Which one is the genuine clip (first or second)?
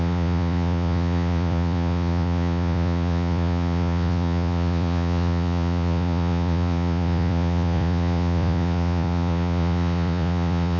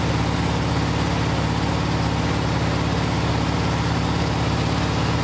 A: second